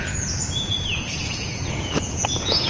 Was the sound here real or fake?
fake